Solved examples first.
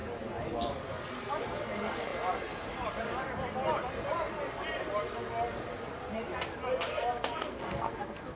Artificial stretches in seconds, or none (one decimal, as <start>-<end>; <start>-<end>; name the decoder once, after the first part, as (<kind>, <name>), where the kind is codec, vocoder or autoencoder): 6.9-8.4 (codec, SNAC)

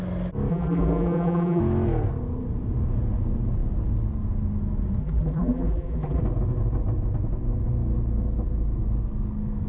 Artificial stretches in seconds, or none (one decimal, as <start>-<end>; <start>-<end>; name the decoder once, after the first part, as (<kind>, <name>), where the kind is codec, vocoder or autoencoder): 0.5-1.6 (vocoder, BigVGAN v2); 5.0-6.2

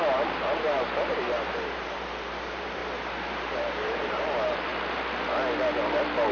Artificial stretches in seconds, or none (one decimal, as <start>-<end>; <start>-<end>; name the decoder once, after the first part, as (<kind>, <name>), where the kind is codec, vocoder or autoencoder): 0.0-2.8 (vocoder, BigVGAN v2); 3.3-4.7

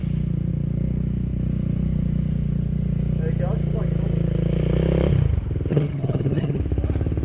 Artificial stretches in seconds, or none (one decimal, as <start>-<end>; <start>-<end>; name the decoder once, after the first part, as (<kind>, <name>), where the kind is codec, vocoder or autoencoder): 5.7-6.6 (vocoder, HiFi-GAN)